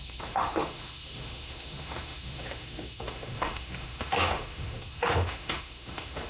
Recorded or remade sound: remade